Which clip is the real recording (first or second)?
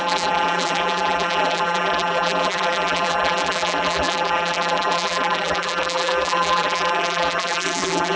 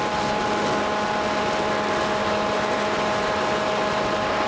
second